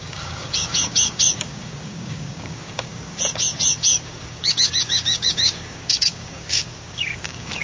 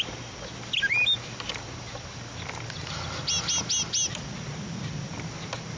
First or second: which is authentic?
second